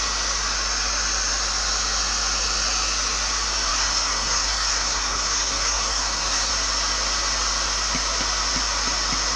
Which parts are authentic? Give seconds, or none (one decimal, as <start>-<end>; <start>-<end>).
0.0-3.7; 6.5-9.4